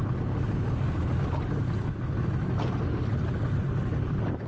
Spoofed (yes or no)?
no